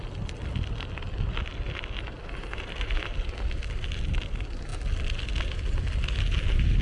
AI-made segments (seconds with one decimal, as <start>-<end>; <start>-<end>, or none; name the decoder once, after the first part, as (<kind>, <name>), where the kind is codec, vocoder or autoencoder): none